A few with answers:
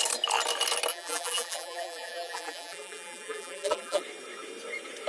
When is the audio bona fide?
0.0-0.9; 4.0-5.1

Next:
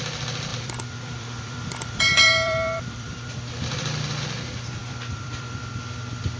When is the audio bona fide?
0.0-0.5; 4.0-4.8; 5.7-6.4

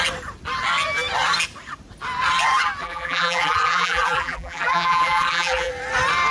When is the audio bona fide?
0.0-2.8; 5.7-6.3